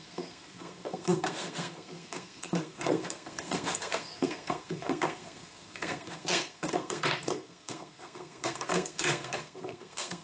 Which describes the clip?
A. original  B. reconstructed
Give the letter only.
B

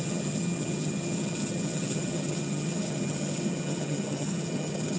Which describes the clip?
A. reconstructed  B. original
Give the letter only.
A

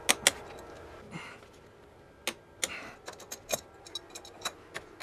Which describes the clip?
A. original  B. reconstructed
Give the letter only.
A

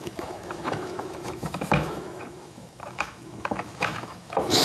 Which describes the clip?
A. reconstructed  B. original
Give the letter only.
A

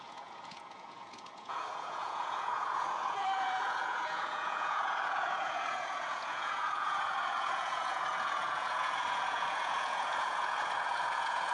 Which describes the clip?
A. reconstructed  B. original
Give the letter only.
A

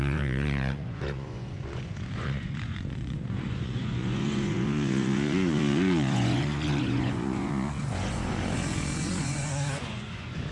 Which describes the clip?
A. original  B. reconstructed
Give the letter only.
B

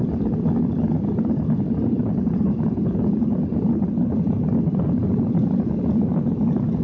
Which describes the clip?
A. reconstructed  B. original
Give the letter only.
B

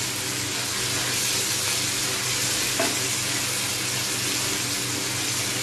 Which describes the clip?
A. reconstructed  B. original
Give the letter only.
B